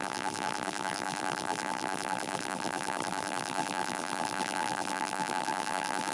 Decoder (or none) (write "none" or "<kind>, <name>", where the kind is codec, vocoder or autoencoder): vocoder, BigVGAN v2